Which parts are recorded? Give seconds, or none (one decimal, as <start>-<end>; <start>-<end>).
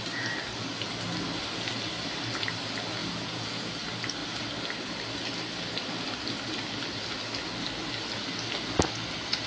0.0-3.0; 3.7-9.5